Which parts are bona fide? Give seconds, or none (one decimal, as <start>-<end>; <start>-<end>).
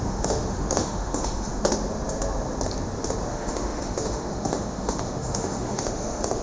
1.5-3.3